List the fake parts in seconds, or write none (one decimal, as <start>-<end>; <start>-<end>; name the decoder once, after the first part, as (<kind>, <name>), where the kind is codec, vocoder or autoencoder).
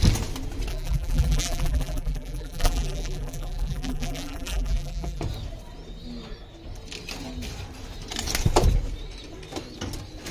0.7-5.2 (vocoder, BigVGAN v2)